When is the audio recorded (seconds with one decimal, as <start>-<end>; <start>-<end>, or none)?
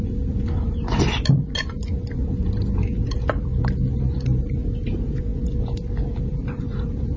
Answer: 0.0-7.2